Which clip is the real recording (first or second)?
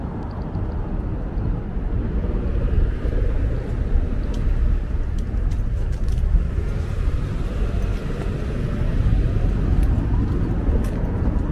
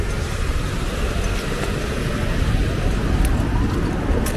first